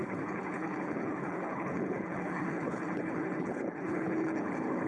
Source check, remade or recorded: remade